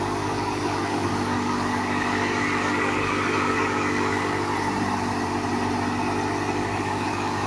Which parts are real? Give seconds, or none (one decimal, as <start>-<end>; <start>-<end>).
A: 4.5-6.5